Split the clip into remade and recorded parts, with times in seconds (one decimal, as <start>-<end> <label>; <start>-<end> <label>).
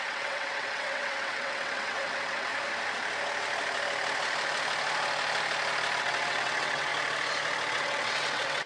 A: 0.0-2.5 remade; 2.5-6.0 recorded; 6.0-6.9 remade; 6.9-7.7 recorded; 7.7-8.7 remade